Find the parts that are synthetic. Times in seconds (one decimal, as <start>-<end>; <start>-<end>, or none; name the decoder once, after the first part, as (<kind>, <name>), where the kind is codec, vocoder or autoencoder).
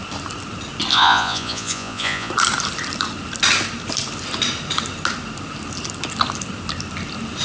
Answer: 0.9-2.3 (vocoder, Vocos)